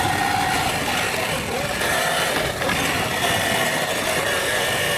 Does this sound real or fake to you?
real